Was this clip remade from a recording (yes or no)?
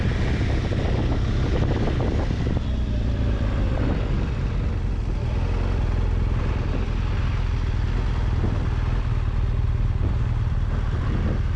no